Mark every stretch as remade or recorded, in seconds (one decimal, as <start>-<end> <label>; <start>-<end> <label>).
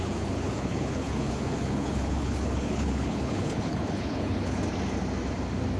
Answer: 0.0-4.6 remade; 4.6-5.8 recorded